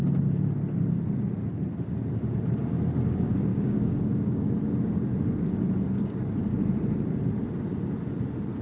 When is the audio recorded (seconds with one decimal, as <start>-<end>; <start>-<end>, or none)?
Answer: 0.0-3.5; 4.5-8.6